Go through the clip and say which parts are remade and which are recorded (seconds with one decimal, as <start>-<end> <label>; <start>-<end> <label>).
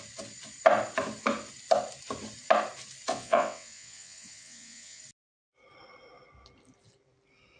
0.0-3.1 recorded; 3.1-5.0 remade; 5.0-7.6 recorded